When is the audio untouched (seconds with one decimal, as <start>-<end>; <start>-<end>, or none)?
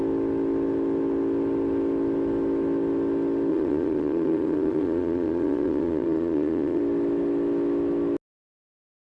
0.0-3.5; 6.8-9.1